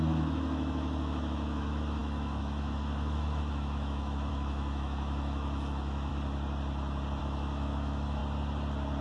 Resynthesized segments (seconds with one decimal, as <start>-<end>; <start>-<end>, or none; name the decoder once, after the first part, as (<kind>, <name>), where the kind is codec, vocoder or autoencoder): 0.0-6.1 (autoencoder, DAC-VAE); 7.2-8.2